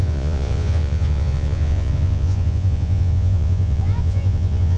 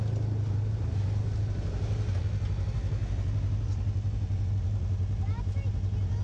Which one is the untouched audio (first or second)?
second